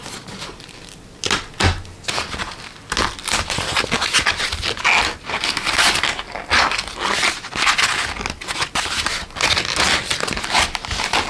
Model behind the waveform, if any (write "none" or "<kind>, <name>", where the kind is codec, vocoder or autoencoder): none